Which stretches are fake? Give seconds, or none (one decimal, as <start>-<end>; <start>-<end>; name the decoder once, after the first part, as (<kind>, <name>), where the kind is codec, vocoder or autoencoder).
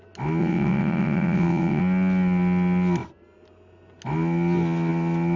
0.4-1.8 (vocoder, WaveNeXt)